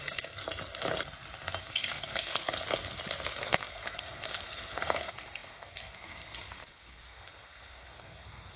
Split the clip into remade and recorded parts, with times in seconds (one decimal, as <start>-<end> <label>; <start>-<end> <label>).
0.0-0.4 remade; 0.4-1.7 recorded; 1.7-2.4 remade; 2.4-3.4 recorded; 3.4-8.6 remade